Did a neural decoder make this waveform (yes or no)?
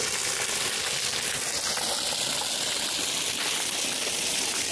no